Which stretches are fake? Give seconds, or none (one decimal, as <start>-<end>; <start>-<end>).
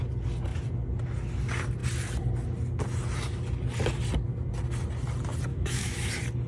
5.5-6.1